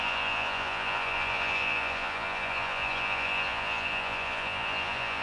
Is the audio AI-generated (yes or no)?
yes